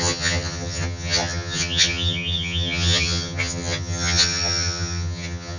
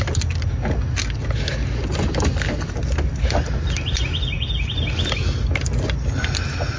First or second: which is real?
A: second